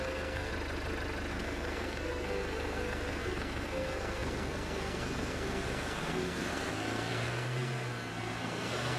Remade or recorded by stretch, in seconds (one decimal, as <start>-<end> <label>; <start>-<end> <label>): 0.0-0.5 remade; 0.5-1.3 recorded; 1.3-9.0 remade